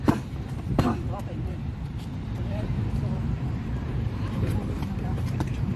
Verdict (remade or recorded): remade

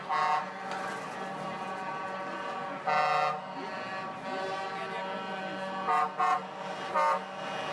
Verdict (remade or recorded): recorded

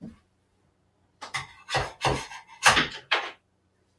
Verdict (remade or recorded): remade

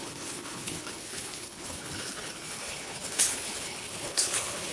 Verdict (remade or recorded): remade